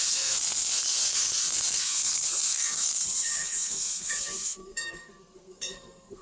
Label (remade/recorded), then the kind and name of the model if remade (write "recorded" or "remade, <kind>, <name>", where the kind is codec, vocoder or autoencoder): remade, codec, SNAC